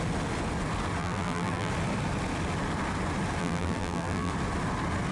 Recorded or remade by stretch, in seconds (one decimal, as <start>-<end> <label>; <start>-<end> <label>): 0.0-1.0 recorded; 1.0-1.7 remade; 1.7-3.4 recorded; 3.4-4.3 remade; 4.3-5.1 recorded